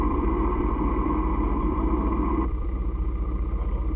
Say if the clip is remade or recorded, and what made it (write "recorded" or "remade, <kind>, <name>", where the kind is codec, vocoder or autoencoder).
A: remade, vocoder, BigVGAN v2